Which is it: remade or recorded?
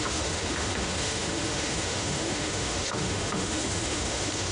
remade